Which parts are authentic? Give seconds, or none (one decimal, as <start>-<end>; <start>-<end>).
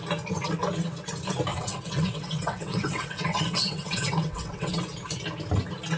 0.0-1.5; 4.8-6.0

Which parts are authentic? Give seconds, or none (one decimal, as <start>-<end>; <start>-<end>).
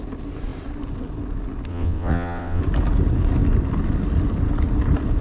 0.0-1.7; 2.6-5.2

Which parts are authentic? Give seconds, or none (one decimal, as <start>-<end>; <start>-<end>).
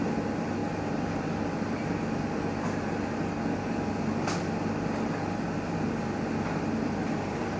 0.0-7.6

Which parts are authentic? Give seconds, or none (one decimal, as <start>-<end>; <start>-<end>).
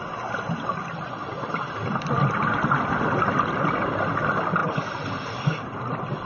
0.0-6.2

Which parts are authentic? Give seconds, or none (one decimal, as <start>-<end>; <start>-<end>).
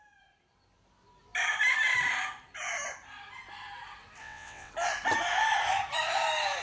0.0-4.2; 4.7-6.6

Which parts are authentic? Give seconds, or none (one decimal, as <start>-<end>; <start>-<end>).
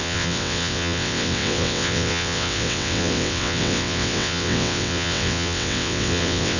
none